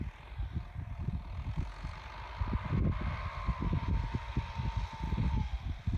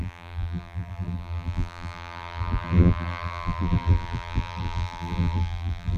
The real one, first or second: first